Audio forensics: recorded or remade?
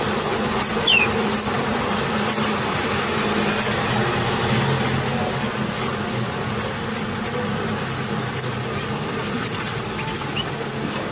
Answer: recorded